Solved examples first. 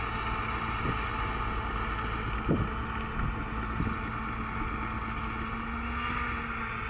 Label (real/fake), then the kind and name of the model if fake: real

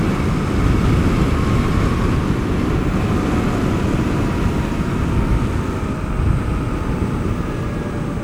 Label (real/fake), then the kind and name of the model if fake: real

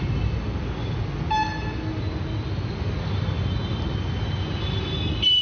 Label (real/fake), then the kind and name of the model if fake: real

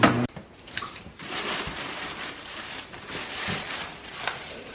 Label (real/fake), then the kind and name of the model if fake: fake, vocoder, BigVGAN v2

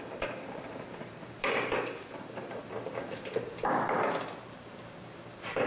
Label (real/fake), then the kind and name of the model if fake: fake, vocoder, BigVGAN v2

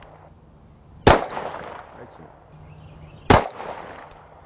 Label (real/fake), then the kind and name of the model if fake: real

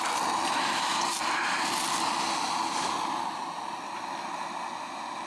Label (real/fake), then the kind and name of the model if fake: real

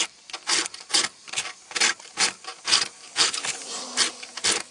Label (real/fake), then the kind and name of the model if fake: fake, vocoder, BigVGAN v2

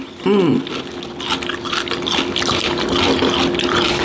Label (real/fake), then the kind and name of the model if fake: real